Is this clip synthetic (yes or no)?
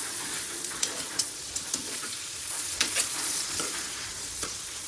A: yes